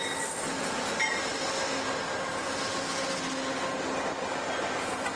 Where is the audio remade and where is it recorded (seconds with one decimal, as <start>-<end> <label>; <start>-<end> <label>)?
0.0-5.2 recorded